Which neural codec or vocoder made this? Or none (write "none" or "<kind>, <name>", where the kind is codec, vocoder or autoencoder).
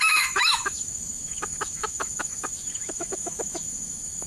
autoencoder, DAC-VAE